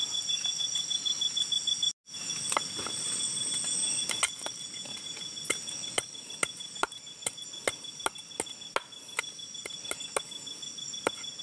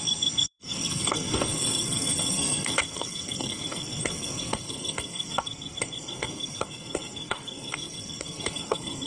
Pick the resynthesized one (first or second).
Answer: second